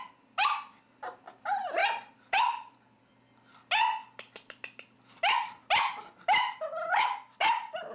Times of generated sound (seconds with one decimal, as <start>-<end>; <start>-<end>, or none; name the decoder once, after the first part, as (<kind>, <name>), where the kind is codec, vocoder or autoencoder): 1.8-3.0 (vocoder, BigVGAN v2)